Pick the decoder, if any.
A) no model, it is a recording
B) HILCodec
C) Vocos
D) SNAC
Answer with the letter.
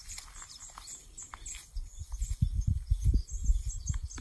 A